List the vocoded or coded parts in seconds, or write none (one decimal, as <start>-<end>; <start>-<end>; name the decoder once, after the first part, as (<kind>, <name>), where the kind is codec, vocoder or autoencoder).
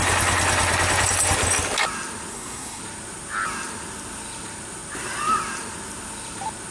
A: 2.3-2.8 (codec, SNAC)